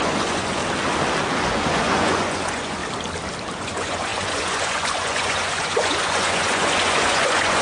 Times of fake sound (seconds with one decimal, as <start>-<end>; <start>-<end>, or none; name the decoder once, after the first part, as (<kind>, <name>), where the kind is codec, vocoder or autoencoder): 0.0-0.6 (vocoder, Vocos); 1.3-2.8; 3.6-7.6